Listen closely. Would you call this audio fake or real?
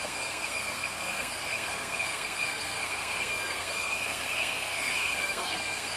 fake